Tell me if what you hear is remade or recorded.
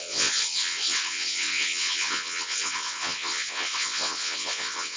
remade